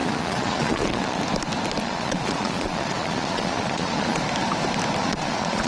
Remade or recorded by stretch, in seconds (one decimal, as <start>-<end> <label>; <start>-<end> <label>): 0.0-1.2 remade; 1.2-1.8 recorded; 1.8-4.2 remade; 4.2-5.0 recorded; 5.0-5.7 remade